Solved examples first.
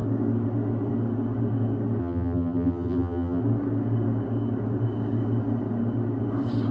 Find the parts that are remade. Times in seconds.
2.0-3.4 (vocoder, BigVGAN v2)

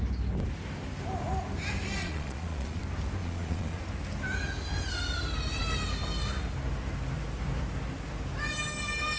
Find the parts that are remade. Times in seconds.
2.0-2.8 (vocoder, Vocos); 3.2-3.8

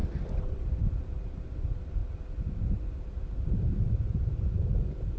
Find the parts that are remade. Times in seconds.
none

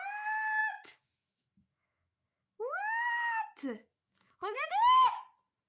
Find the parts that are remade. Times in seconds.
0.6-2.6 (autoencoder, DAC-VAE); 3.8-5.2

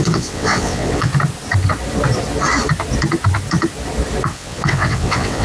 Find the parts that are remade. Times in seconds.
0.0-1.1 (vocoder, WaveNeXt); 4.3-5.4

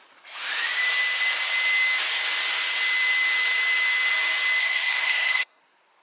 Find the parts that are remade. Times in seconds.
4.6-5.6 (codec, SNAC)